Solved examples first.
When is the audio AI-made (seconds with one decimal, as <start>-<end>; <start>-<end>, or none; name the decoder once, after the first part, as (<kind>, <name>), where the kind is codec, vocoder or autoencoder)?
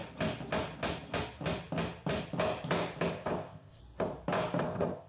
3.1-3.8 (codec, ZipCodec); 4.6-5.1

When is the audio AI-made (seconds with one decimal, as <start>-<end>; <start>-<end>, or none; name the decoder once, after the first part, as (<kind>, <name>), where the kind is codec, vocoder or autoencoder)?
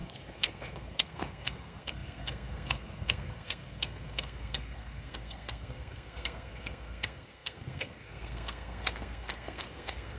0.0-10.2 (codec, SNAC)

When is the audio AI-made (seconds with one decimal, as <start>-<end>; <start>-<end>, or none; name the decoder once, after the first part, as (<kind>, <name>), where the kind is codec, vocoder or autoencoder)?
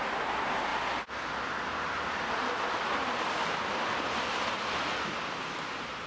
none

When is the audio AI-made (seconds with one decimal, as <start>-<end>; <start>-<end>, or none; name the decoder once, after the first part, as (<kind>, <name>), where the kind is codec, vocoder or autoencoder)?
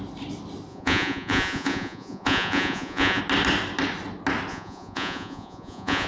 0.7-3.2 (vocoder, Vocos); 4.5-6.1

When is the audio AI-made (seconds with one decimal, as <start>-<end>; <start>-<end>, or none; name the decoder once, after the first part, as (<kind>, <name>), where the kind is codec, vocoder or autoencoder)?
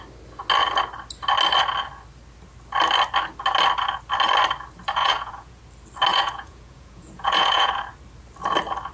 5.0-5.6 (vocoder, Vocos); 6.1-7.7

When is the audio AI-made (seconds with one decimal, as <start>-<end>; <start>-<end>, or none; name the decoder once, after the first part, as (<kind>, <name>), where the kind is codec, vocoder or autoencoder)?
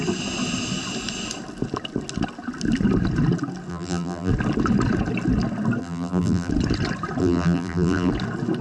3.7-4.3 (vocoder, BigVGAN v2); 5.8-6.5; 7.2-8.1